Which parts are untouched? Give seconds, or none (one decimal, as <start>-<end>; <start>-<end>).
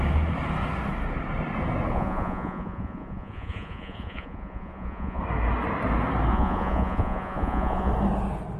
0.0-1.9; 5.2-6.3; 7.9-8.6